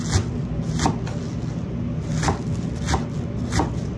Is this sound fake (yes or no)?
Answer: no